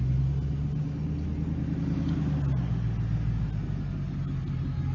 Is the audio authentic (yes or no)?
yes